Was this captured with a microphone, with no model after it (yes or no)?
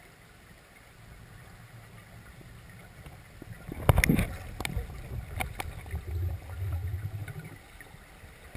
yes